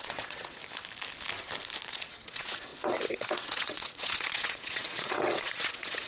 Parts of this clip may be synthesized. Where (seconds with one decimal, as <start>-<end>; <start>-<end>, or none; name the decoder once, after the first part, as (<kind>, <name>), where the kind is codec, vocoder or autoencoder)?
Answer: 0.0-0.6 (vocoder, WaveNeXt); 1.9-6.1